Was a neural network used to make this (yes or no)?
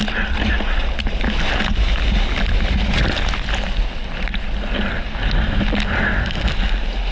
no